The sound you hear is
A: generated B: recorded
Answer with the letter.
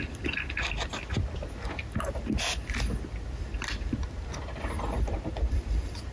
B